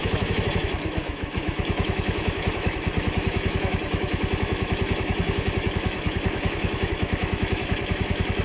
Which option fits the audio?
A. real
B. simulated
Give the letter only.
B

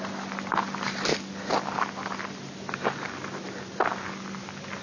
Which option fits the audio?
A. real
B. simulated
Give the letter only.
A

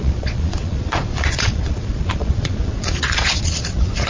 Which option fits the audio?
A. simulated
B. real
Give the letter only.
A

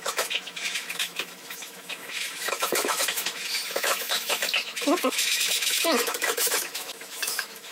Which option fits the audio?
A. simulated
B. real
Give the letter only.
A